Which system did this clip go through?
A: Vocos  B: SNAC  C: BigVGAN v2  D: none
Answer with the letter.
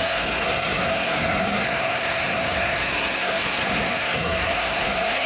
B